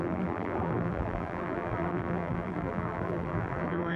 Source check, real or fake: fake